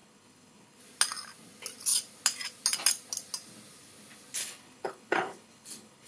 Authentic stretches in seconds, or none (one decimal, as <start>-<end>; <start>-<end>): 0.8-4.4